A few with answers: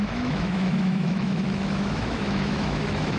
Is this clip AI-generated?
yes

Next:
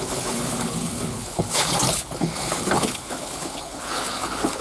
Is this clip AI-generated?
yes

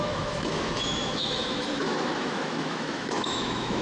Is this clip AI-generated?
yes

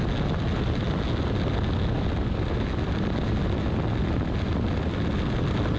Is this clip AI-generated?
no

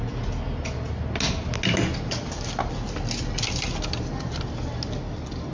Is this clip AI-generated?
no